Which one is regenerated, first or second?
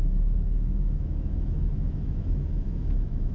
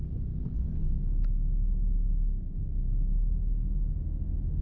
first